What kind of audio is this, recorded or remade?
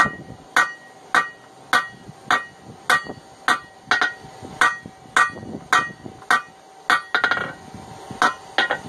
recorded